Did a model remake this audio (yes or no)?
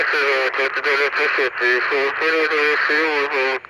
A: no